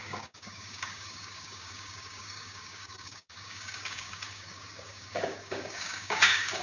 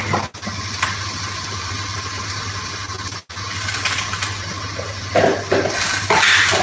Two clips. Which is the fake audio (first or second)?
first